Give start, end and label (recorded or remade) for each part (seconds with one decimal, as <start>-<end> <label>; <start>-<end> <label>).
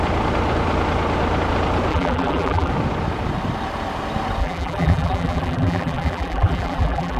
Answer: 0.0-1.9 recorded; 1.9-2.7 remade; 2.7-4.4 recorded; 4.4-7.2 remade